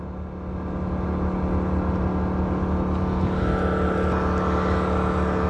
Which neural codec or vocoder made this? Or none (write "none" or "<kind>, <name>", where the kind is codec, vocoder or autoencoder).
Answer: none